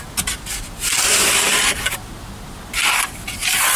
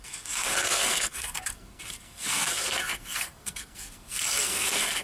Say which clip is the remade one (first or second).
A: second